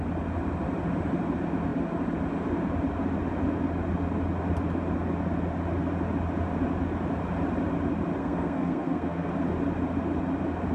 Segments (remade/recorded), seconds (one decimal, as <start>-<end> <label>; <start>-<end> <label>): 0.0-8.2 recorded; 8.2-9.3 remade; 9.3-10.7 recorded

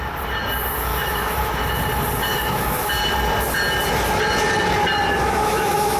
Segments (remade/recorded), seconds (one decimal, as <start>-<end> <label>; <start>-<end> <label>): 0.0-0.9 recorded; 0.9-1.5 remade; 1.5-2.3 recorded; 2.3-2.9 remade; 2.9-5.2 recorded; 5.2-6.0 remade

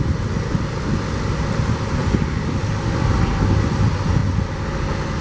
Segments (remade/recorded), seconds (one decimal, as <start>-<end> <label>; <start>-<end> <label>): 0.0-5.2 recorded

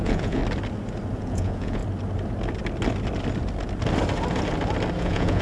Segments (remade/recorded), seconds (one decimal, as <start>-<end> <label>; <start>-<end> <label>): 0.0-0.4 remade; 0.4-1.2 recorded; 1.2-1.8 remade; 1.8-5.0 recorded; 5.0-5.4 remade

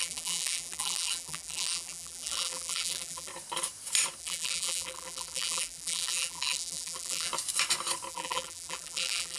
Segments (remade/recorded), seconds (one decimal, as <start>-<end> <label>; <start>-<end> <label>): 0.0-3.3 remade; 3.3-4.2 recorded; 4.2-7.3 remade; 7.3-8.1 recorded; 8.1-9.4 remade